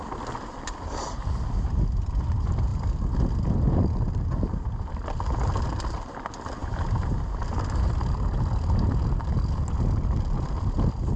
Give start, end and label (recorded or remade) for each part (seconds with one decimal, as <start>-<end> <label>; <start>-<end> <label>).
0.0-11.2 recorded